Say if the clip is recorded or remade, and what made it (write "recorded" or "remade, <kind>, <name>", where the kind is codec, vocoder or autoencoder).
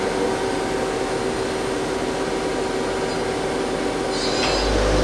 recorded